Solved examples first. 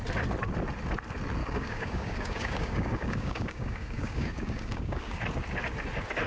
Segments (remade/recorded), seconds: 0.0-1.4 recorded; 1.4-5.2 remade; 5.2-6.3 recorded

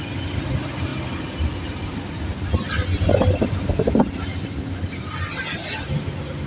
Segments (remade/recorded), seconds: 0.0-6.5 recorded

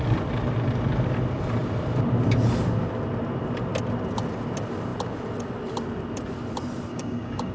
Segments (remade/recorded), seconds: 0.0-6.9 recorded; 6.9-7.5 remade